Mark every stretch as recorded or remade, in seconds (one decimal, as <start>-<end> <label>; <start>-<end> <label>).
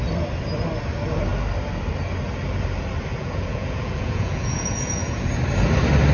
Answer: 0.0-3.1 recorded; 3.1-5.3 remade; 5.3-6.1 recorded